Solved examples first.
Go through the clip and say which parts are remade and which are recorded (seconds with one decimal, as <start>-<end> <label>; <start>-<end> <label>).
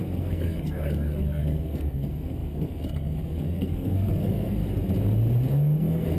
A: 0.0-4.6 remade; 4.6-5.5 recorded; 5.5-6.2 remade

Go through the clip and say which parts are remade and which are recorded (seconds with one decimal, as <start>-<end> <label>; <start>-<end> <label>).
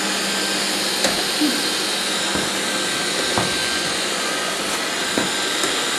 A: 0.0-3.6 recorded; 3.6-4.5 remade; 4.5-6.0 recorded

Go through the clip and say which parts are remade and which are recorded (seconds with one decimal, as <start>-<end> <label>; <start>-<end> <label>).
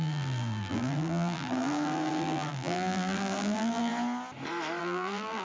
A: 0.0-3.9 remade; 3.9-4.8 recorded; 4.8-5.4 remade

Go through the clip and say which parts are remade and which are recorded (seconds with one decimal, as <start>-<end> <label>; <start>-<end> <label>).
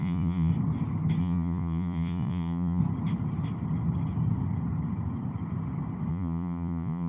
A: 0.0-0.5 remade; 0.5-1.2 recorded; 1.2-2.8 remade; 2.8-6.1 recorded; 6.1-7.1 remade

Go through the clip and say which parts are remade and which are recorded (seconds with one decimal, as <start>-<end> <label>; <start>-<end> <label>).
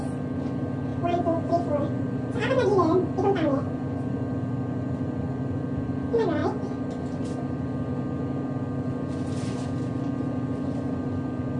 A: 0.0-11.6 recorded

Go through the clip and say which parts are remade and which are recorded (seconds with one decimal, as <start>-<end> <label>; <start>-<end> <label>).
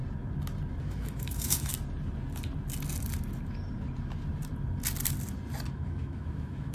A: 0.0-0.8 recorded; 0.8-1.7 remade; 1.7-5.7 recorded; 5.7-6.7 remade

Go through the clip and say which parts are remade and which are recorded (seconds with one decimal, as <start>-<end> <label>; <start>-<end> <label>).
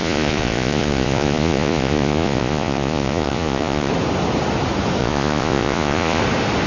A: 0.0-3.9 remade; 3.9-5.0 recorded; 5.0-6.2 remade; 6.2-6.7 recorded